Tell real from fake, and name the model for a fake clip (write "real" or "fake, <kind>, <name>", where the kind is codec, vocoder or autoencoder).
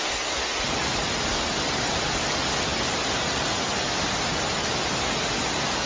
real